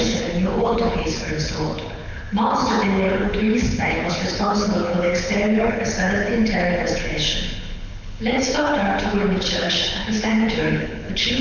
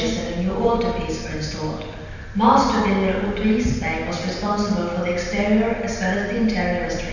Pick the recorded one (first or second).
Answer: second